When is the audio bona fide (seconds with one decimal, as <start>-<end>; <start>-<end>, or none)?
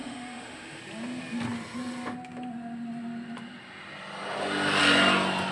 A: 0.8-5.5